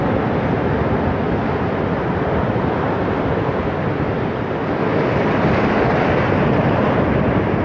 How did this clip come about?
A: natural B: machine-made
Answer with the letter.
A